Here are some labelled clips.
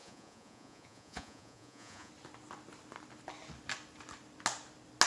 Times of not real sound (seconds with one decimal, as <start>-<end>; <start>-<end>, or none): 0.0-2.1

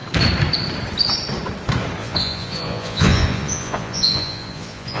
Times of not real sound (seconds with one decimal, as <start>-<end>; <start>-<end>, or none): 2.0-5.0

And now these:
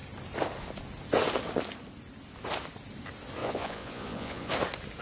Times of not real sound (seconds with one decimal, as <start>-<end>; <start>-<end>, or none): 3.4-4.5